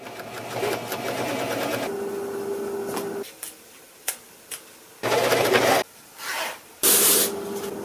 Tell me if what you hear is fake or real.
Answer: real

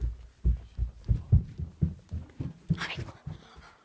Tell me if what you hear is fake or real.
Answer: real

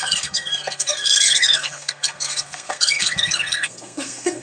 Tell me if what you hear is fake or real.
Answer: fake